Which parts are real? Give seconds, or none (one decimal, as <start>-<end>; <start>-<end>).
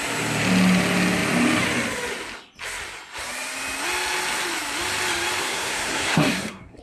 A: 0.0-5.4